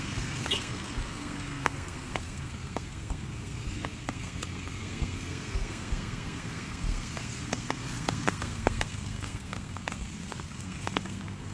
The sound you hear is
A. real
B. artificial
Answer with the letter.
B